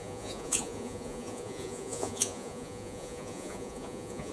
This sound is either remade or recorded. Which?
remade